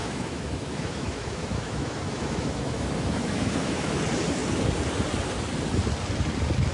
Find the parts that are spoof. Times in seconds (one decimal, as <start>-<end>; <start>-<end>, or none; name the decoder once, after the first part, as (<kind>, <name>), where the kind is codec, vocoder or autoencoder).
0.0-4.0 (autoencoder, DAC-VAE)